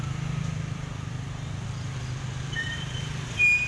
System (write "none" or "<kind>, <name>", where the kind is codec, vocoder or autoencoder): vocoder, BigVGAN v2